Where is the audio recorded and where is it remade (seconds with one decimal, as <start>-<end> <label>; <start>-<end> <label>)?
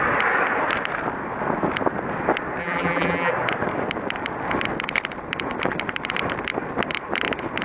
0.0-2.6 recorded; 2.6-3.3 remade; 3.3-7.6 recorded